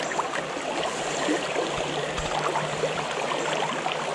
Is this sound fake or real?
real